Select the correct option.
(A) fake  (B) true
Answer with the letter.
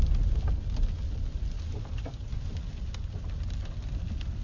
B